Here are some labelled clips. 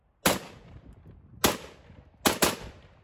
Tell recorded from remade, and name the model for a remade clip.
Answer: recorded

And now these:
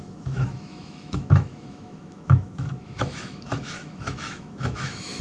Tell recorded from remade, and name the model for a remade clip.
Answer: remade, autoencoder, DAC-VAE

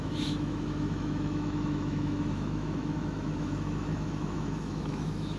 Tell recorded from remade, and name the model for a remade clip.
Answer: remade, autoencoder, DAC-VAE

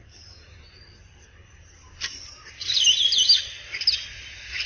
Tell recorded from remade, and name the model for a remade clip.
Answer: recorded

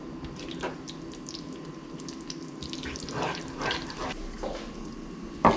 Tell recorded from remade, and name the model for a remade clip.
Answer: recorded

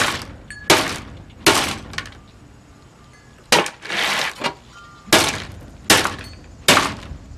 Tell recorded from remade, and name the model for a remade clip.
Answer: recorded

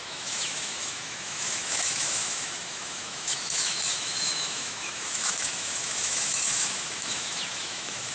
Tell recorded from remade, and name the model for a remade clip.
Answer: remade, autoencoder, DAC-VAE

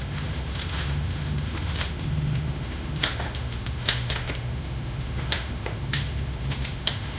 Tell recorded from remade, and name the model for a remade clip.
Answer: remade, autoencoder, DAC-VAE